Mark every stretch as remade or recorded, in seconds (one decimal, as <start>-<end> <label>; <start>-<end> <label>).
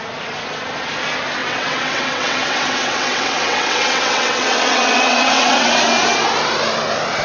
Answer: 0.0-1.4 recorded; 1.4-5.7 remade; 5.7-7.2 recorded